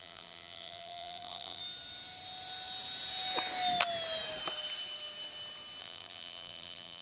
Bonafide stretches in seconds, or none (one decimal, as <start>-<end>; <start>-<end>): 1.6-5.8